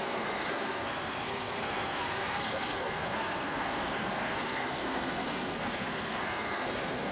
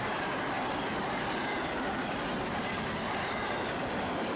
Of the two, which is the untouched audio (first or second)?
second